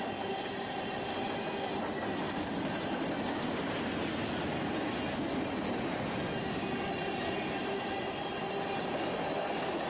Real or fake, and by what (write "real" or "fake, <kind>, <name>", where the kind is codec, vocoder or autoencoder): real